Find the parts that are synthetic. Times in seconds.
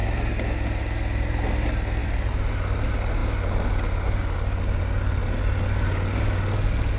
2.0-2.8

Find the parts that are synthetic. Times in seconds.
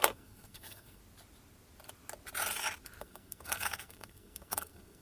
0.0-1.0; 3.0-5.0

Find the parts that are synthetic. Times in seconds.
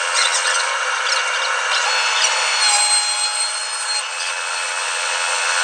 0.0-0.7; 4.1-5.6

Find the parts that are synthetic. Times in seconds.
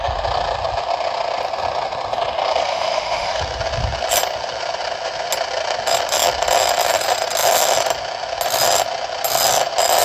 2.6-3.4